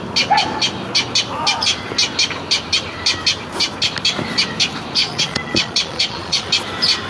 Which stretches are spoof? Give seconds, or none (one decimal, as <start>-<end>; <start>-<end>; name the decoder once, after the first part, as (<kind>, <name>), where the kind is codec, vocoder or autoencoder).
5.0-6.5 (vocoder, Vocos)